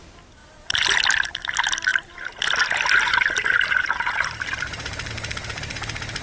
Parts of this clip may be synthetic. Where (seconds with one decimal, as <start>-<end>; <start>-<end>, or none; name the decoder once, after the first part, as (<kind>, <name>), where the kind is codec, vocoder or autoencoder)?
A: none